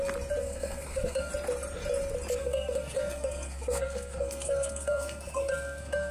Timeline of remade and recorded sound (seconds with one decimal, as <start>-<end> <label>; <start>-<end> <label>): 0.0-0.4 recorded; 0.4-1.3 remade; 1.3-2.4 recorded; 2.4-6.1 remade